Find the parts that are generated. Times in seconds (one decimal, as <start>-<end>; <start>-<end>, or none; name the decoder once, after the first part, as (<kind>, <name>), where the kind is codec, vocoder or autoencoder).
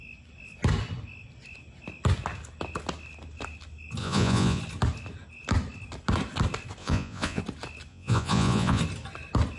4.0-4.6 (vocoder, Vocos); 6.8-7.4; 7.9-8.8